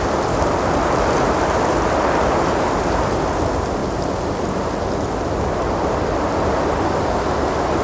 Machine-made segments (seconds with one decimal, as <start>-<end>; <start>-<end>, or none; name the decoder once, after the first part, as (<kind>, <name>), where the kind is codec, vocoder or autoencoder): none